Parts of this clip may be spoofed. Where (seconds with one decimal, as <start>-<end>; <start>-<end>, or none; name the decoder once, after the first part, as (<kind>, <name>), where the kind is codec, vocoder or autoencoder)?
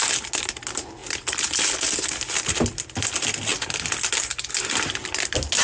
none